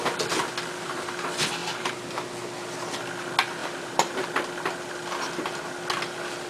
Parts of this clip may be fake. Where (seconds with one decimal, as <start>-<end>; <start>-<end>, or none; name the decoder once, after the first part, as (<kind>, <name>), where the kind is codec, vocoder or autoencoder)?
1.6-2.2 (vocoder, BigVGAN v2); 3.6-4.4